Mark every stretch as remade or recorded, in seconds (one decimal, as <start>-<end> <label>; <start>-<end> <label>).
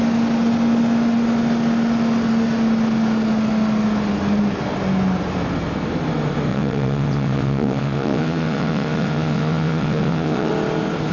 0.0-6.5 recorded; 6.5-10.5 remade; 10.5-11.1 recorded